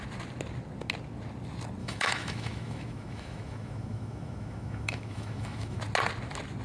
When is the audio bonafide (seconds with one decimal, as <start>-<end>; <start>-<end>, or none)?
0.0-1.8; 5.8-6.6